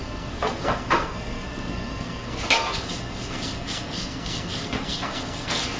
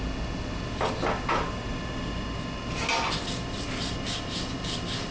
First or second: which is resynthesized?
first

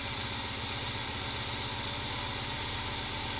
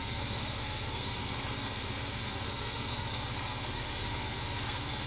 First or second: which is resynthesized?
second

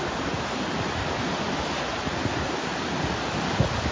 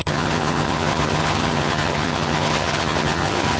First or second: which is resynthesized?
second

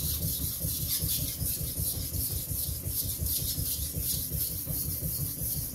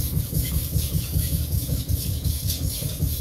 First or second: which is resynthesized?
second